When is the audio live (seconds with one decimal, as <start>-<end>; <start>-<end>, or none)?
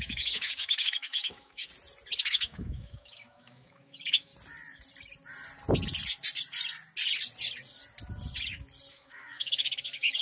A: 1.7-2.2; 4.3-8.9